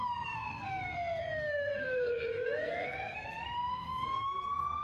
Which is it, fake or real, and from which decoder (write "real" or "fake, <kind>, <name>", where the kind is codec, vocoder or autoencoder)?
fake, codec, SNAC